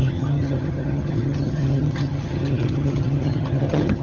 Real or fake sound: fake